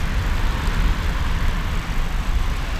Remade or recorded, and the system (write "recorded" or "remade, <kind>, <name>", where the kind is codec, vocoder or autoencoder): remade, vocoder, BigVGAN v2